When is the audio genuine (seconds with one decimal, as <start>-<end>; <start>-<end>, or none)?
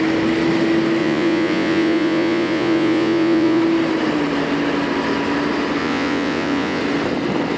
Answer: 0.0-1.0; 3.6-5.8; 6.8-7.6